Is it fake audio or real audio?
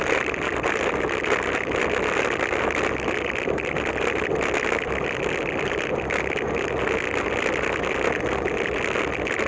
real